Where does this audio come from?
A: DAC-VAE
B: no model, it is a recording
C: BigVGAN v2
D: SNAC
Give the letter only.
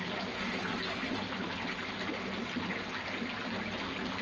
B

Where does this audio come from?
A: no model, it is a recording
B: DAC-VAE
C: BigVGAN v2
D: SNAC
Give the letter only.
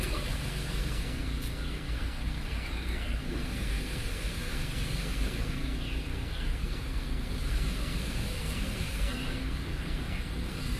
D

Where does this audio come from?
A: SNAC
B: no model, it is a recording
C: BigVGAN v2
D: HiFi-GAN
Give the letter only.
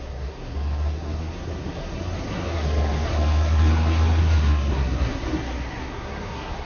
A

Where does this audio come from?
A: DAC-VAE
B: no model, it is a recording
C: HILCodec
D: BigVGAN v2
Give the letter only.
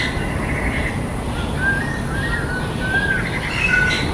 B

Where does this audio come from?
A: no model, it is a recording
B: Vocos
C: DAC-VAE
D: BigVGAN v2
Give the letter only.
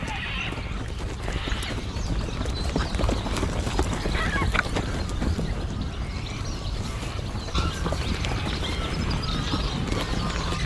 A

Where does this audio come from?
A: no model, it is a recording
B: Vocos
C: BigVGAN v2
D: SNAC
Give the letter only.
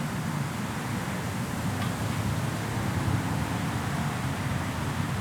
A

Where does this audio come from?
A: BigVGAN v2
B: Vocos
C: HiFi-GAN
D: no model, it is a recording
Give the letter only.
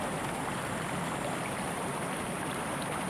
D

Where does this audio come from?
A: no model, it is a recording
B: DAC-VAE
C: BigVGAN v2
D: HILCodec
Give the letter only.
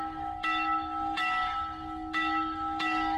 B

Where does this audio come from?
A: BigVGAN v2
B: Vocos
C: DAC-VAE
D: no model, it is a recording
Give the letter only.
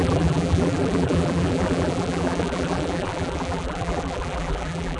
A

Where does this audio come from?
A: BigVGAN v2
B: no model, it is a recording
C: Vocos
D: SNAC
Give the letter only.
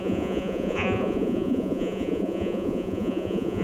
C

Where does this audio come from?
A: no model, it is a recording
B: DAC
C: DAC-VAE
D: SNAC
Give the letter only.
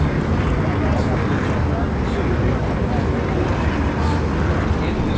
A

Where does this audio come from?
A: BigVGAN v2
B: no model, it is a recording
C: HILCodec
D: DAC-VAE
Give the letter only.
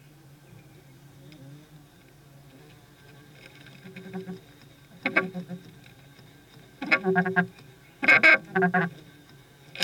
B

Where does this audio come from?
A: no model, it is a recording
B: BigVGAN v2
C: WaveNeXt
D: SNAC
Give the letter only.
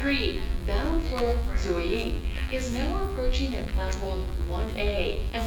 B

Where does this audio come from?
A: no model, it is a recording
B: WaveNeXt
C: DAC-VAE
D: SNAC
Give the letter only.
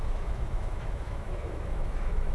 C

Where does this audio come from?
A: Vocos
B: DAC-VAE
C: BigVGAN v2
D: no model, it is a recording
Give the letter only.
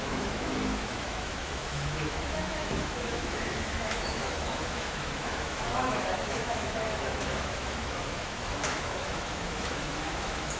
B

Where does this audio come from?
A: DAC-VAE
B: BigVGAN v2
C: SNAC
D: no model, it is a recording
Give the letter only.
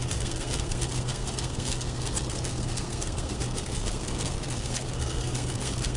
C